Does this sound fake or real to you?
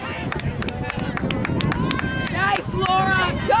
real